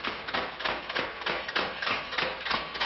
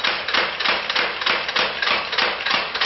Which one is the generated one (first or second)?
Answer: first